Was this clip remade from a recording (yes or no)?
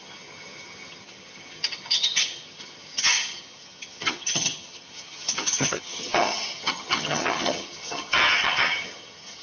yes